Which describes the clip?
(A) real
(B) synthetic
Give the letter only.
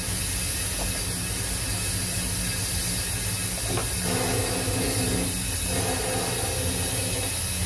A